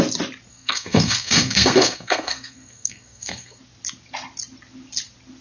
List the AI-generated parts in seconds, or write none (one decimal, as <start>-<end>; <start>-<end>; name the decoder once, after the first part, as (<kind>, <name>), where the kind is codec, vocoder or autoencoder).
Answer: 0.5-3.6 (codec, SNAC)